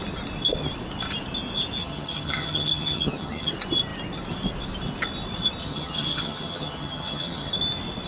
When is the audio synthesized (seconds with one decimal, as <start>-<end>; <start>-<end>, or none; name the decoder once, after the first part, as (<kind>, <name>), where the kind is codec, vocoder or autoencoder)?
1.8-3.5 (vocoder, HiFi-GAN); 5.6-7.5